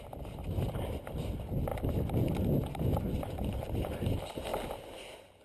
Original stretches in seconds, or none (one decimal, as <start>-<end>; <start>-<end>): 0.0-5.4